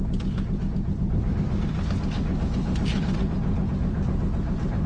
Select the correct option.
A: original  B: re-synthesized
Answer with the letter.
A